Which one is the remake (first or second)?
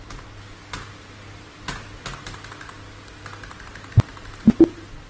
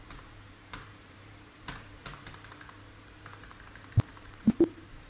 second